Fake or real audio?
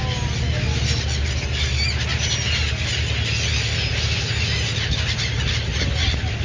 real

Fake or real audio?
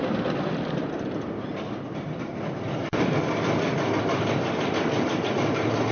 real